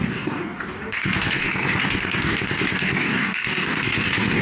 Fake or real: fake